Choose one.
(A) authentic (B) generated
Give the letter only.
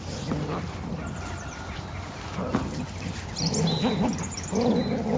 A